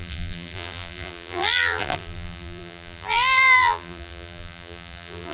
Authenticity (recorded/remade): remade